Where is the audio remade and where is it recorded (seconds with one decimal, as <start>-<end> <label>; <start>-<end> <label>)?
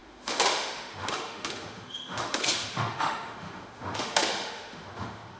0.0-5.4 remade